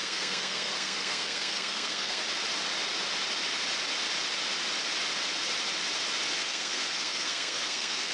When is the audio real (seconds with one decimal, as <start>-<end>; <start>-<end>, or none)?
2.2-6.4